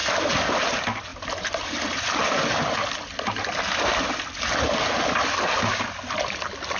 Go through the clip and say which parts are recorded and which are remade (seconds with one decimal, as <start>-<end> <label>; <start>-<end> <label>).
0.0-6.8 recorded